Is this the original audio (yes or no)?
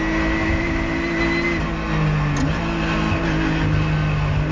yes